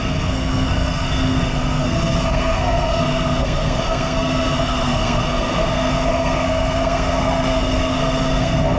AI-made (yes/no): yes